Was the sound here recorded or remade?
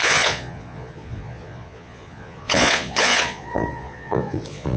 remade